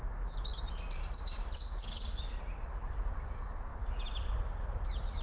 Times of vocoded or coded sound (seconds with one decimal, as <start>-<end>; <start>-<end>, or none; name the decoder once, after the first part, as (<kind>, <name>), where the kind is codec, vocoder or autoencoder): none